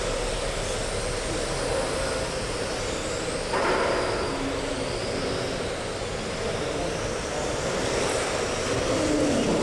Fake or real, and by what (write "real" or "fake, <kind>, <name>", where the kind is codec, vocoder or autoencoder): real